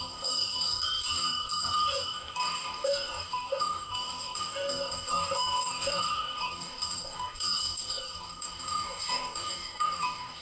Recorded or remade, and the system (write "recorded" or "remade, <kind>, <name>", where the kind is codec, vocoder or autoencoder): remade, codec, DAC